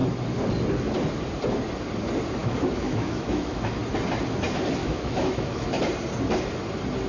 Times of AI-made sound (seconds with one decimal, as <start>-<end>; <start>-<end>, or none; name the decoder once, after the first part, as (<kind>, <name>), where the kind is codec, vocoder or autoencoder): 2.4-3.8 (autoencoder, DAC-VAE); 4.8-5.8